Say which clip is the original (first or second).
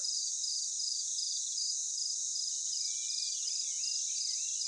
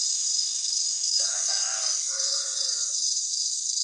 first